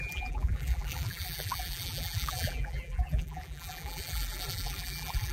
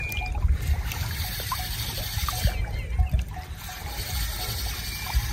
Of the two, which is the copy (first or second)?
first